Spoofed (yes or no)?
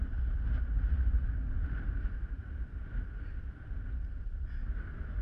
no